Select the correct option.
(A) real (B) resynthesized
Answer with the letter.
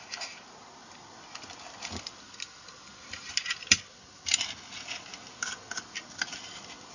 A